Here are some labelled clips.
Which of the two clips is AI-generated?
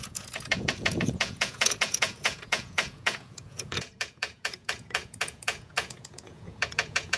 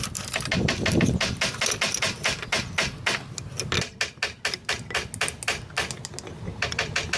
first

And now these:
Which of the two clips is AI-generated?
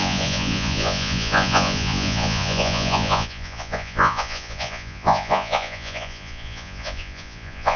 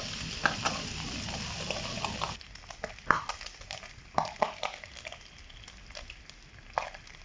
first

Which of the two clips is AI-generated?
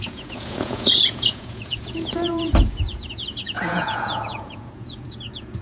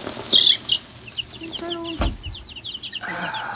first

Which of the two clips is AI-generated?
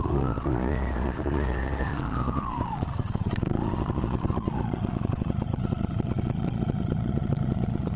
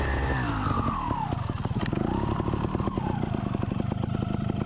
first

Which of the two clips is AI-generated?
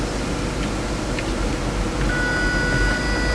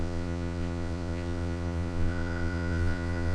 second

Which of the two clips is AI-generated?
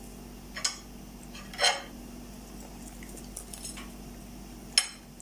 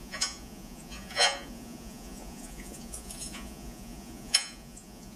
second